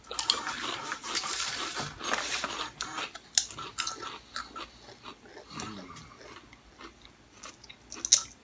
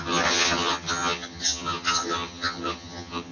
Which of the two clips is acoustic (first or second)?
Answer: first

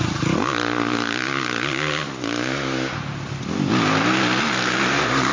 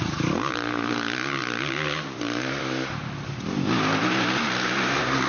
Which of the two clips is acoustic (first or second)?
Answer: first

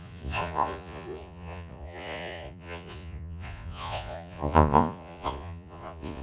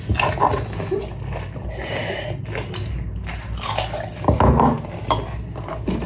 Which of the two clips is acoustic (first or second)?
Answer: second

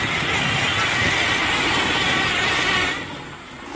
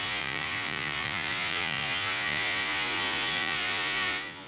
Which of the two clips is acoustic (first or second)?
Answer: first